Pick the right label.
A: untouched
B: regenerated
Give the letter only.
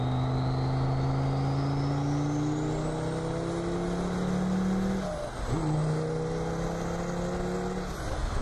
A